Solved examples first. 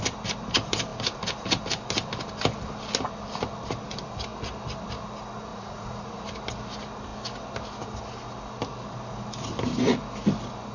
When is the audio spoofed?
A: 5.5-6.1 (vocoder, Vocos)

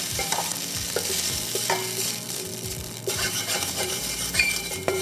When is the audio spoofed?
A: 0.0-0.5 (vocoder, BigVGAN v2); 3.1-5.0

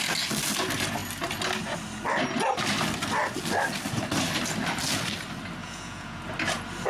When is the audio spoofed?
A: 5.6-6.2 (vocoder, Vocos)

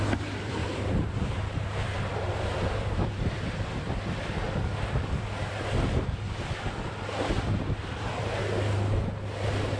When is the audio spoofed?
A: 0.6-3.5 (vocoder, BigVGAN v2)

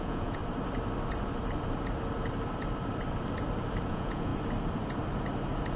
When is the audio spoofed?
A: 0.0-0.4 (vocoder, Vocos); 3.9-4.3